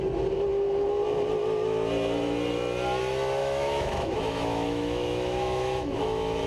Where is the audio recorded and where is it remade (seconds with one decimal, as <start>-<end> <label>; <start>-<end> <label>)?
0.0-3.4 recorded; 3.4-6.5 remade